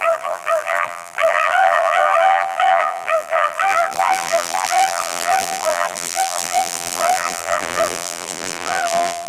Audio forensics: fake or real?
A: fake